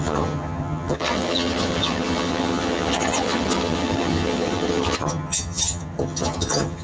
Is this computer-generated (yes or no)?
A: yes